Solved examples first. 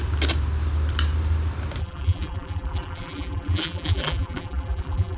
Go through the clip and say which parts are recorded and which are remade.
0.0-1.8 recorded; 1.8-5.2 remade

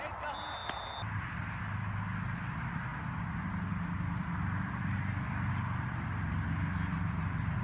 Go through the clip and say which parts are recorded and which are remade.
0.0-7.6 recorded

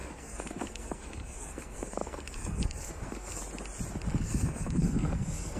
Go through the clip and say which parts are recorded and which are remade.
0.0-3.4 remade; 3.4-4.1 recorded; 4.1-5.6 remade

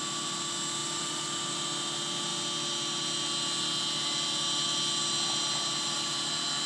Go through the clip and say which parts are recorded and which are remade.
0.0-0.8 recorded; 0.8-1.5 remade; 1.5-6.7 recorded

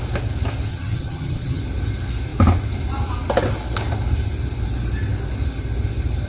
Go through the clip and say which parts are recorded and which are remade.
0.0-0.7 recorded; 0.7-1.6 remade; 1.6-6.3 recorded

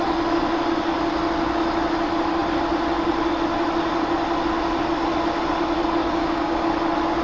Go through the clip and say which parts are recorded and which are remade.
0.0-6.0 recorded; 6.0-6.7 remade; 6.7-7.2 recorded

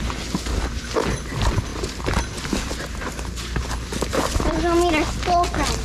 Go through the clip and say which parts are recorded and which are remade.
0.0-1.7 recorded; 1.7-3.6 remade; 3.6-4.1 recorded; 4.1-4.6 remade; 4.6-5.8 recorded